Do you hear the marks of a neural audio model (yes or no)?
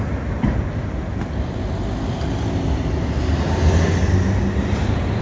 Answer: no